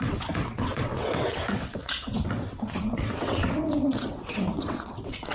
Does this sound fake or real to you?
fake